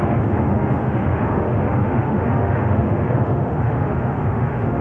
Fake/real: fake